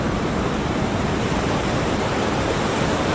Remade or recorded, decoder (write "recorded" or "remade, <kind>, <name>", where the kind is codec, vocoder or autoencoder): recorded